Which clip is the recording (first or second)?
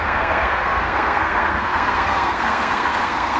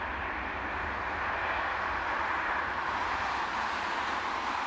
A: second